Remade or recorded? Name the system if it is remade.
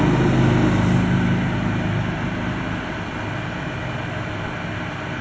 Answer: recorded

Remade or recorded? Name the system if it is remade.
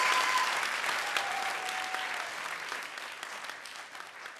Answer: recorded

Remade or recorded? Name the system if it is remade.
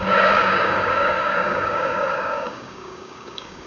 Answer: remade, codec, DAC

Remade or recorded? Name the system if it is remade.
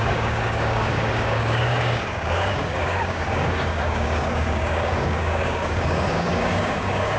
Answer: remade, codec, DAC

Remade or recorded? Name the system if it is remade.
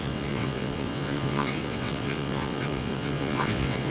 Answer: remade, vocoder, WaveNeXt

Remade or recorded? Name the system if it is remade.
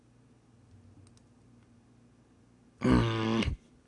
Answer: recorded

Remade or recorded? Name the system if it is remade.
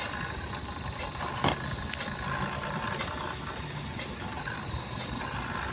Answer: recorded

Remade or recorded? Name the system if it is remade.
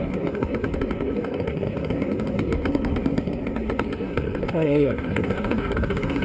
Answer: remade, codec, SNAC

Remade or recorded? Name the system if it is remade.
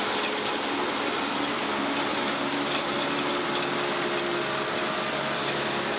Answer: recorded